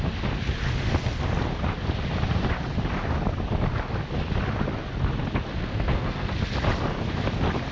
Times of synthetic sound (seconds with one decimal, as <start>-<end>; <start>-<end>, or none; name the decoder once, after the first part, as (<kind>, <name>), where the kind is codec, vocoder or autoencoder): 5.6-6.3 (codec, SNAC)